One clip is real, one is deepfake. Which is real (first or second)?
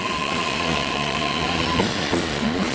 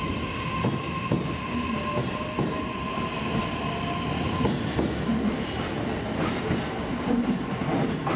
second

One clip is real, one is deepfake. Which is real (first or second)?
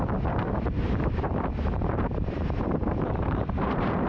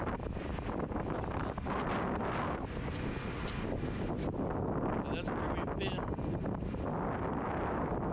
second